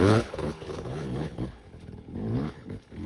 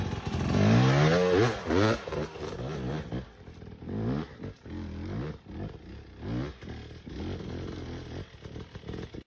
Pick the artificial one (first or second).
first